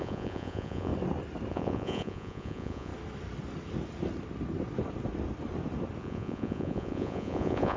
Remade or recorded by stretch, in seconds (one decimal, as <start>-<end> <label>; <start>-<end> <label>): 0.0-0.9 remade; 0.9-1.5 recorded; 1.5-2.9 remade; 2.9-6.0 recorded; 6.0-7.8 remade